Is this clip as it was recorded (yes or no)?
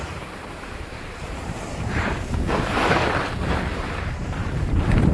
no